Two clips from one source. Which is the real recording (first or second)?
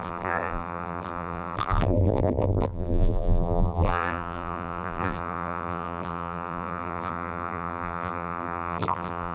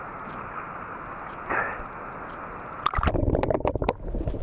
second